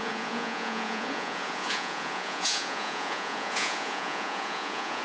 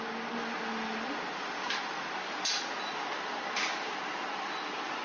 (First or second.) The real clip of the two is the second